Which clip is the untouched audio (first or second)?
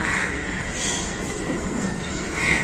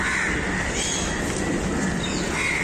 second